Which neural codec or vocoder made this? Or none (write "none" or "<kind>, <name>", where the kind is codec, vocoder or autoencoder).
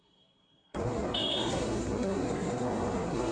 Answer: codec, SNAC